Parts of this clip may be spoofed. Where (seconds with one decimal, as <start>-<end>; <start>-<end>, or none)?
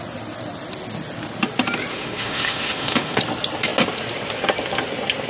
1.9-3.2